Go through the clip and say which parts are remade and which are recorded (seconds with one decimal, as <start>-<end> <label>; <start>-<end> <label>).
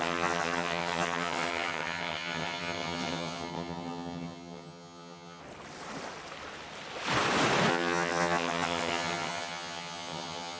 0.0-5.4 remade; 5.4-7.7 recorded; 7.7-10.6 remade